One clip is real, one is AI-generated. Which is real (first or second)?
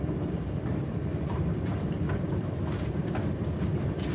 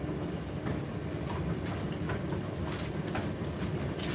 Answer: second